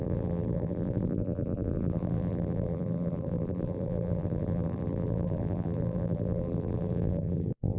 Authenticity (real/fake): fake